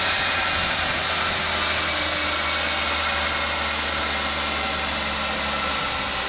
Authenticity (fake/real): real